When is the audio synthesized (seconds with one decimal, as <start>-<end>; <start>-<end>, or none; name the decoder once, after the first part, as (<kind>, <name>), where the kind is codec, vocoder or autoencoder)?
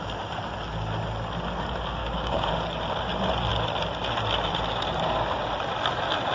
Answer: 2.0-2.5 (codec, DAC)